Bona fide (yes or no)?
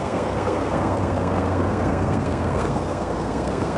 no